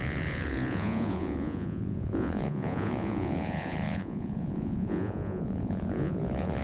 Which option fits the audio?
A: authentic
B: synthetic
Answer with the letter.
B